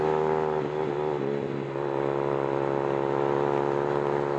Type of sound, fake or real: real